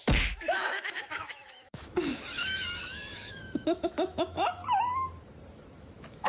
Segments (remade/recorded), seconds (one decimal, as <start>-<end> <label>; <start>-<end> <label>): 0.0-4.6 remade; 4.6-5.8 recorded; 5.8-6.3 remade